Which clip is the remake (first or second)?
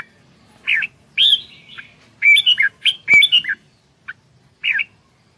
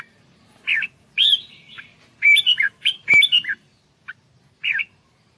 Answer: second